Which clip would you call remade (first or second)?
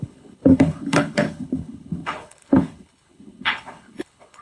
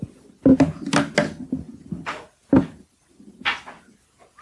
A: first